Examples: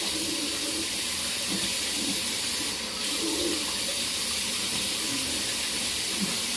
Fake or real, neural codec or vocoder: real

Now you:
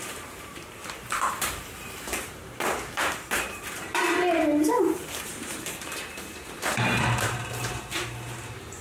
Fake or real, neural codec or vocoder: fake, vocoder, BigVGAN v2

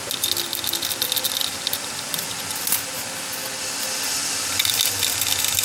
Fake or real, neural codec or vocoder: real